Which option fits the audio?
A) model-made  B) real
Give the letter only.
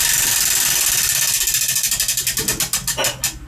B